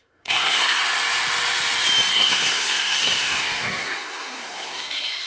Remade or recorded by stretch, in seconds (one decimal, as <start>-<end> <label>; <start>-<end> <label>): 0.0-0.8 remade; 0.8-2.1 recorded; 2.1-5.3 remade